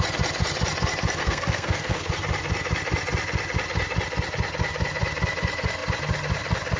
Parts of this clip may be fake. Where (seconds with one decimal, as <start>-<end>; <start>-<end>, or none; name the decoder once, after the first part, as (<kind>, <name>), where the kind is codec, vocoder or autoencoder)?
1.2-2.1 (codec, SNAC)